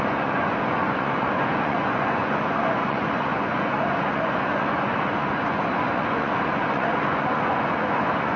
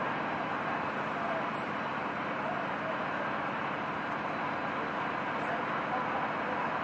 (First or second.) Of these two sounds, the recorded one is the second